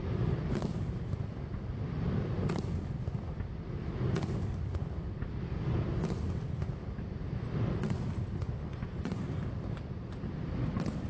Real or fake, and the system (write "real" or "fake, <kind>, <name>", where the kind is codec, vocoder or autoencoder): real